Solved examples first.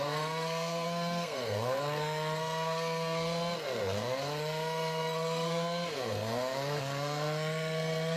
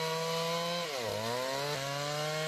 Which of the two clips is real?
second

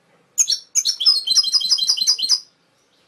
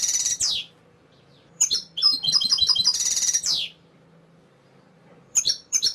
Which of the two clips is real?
first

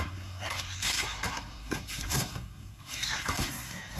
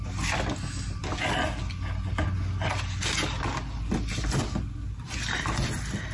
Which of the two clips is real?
second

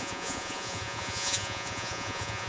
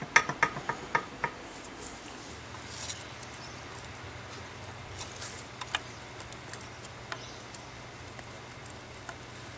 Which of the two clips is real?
second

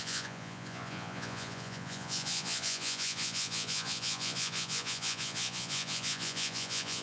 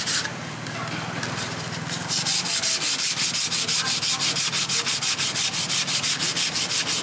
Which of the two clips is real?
second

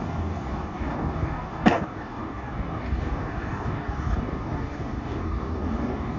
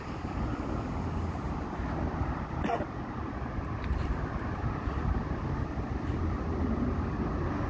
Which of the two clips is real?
second